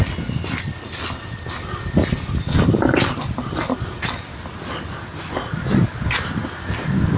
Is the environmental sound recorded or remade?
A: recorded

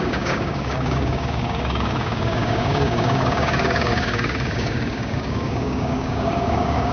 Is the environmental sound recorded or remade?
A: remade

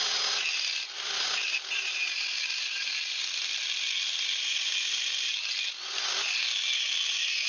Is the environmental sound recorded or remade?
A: recorded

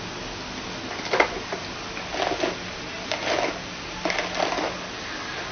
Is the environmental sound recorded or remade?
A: recorded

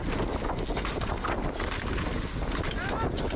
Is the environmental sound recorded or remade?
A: recorded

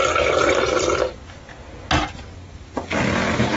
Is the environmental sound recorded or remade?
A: recorded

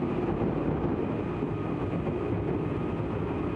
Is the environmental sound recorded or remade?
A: recorded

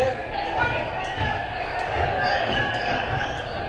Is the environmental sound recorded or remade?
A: remade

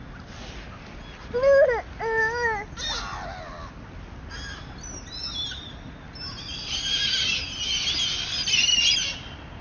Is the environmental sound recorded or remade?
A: recorded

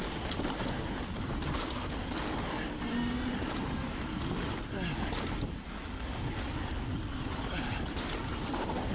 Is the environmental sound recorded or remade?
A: recorded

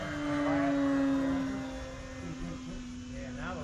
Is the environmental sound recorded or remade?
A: recorded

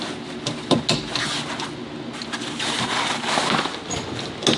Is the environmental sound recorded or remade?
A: recorded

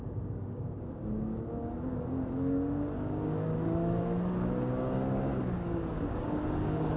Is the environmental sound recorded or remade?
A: remade